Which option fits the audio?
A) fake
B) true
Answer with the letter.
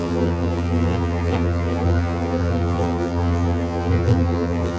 A